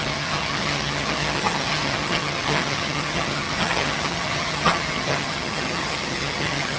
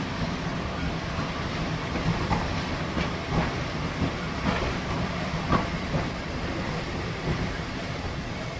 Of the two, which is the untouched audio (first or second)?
second